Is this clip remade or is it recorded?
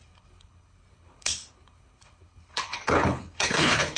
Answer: remade